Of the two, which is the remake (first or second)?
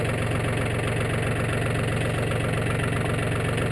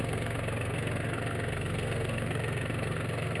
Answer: second